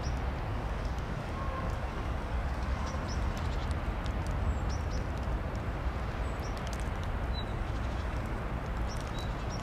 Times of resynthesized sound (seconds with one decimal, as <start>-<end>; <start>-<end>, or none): 0.5-2.9; 7.5-8.4